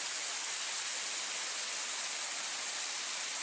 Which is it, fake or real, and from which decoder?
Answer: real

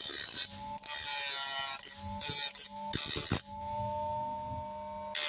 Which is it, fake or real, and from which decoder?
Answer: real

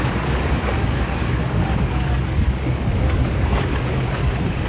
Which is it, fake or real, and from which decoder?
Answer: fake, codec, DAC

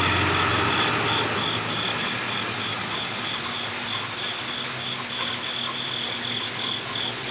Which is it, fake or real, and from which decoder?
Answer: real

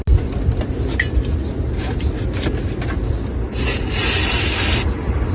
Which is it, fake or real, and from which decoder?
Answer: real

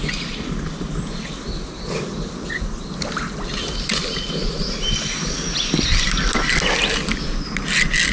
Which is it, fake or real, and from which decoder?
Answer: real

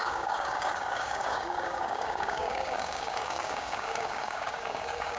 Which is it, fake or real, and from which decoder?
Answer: fake, codec, DAC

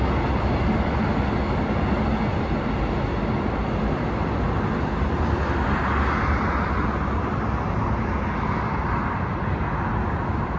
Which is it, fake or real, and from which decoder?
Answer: real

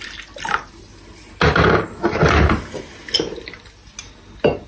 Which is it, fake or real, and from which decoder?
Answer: real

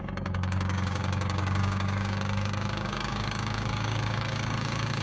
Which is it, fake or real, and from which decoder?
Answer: fake, codec, DAC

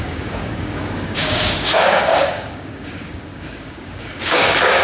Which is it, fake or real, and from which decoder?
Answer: fake, codec, DAC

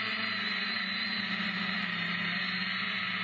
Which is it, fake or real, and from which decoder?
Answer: real